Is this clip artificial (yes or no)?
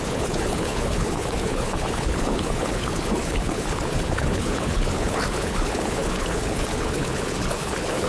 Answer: yes